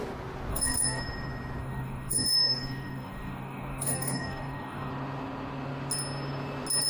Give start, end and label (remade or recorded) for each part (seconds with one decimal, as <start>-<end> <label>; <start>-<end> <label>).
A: 0.0-0.5 recorded; 0.5-1.0 remade; 1.0-1.6 recorded; 1.6-4.9 remade; 4.9-6.9 recorded